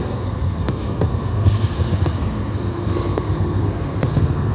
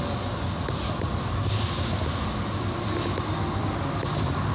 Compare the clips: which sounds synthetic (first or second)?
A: first